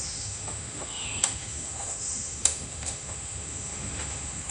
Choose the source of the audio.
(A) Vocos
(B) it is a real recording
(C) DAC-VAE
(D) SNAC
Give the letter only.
C